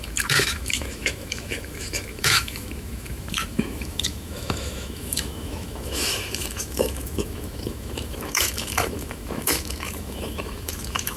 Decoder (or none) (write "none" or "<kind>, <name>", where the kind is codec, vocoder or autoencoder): autoencoder, DAC-VAE